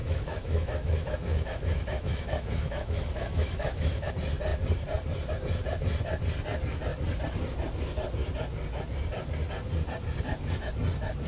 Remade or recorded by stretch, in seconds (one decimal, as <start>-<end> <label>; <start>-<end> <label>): 0.0-4.1 remade; 4.1-11.3 recorded